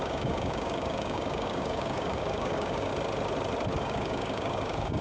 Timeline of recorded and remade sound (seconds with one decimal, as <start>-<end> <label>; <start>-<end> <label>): 0.0-2.9 remade; 2.9-3.8 recorded; 3.8-5.0 remade